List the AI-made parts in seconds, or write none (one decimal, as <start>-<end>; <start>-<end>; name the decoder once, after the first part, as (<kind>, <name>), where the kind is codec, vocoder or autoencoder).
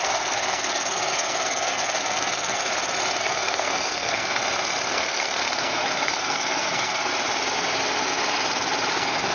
0.0-2.7 (codec, SNAC); 3.2-4.4; 4.9-7.1; 8.9-9.3